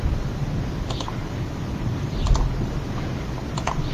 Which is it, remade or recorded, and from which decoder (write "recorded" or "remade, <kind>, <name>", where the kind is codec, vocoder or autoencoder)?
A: recorded